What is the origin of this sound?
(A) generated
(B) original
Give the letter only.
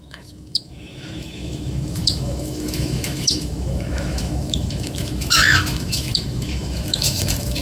A